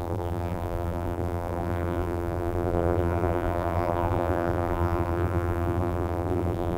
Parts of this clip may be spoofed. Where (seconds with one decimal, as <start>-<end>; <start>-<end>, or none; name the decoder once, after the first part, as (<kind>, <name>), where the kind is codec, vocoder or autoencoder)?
0.0-6.8 (vocoder, BigVGAN v2)